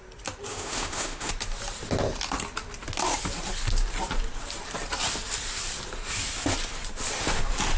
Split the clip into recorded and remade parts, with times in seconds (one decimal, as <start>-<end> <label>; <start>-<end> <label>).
0.0-0.5 recorded; 0.5-1.3 remade; 1.3-7.8 recorded